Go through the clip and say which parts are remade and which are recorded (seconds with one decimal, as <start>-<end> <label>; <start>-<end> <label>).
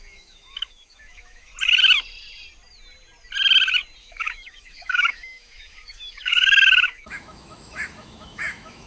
0.0-1.5 remade; 1.5-4.0 recorded; 4.0-8.9 remade